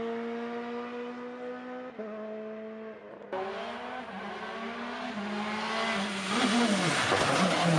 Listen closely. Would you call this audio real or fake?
real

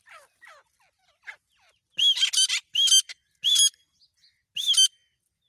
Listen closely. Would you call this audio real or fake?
real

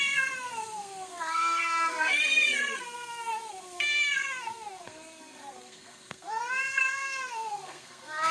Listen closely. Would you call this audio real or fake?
fake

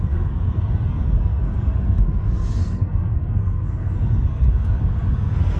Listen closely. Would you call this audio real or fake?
fake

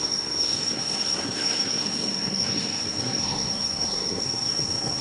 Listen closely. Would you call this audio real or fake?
fake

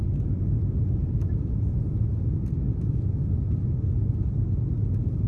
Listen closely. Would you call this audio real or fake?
real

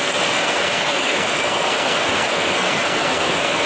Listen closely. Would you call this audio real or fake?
fake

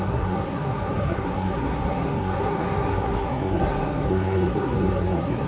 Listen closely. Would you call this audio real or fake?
fake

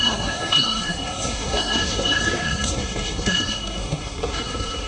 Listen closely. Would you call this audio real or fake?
fake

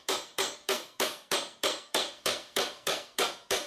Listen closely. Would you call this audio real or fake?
fake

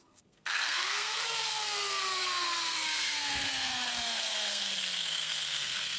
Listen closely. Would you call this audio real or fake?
fake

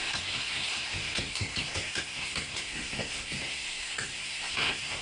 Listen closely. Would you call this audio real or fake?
fake